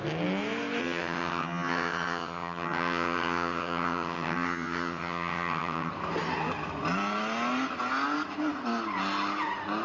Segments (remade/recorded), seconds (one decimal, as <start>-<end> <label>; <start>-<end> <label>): 0.0-0.8 recorded; 0.8-5.9 remade; 5.9-9.8 recorded